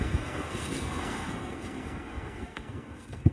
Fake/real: fake